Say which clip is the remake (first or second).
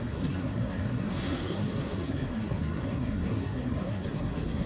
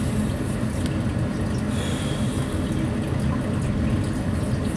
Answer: first